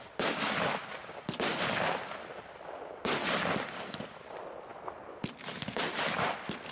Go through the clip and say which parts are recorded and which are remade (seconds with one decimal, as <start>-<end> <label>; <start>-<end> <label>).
0.0-6.7 recorded